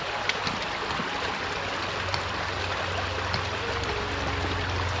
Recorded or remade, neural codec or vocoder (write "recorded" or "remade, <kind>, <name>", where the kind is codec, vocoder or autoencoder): recorded